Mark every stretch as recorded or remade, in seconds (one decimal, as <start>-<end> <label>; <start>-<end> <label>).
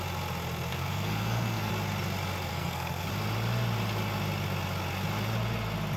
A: 0.0-0.7 recorded; 0.7-1.7 remade; 1.7-2.5 recorded; 2.5-3.1 remade; 3.1-6.0 recorded